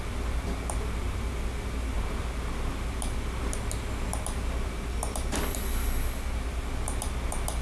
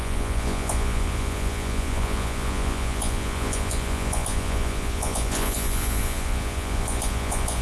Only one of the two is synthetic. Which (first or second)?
second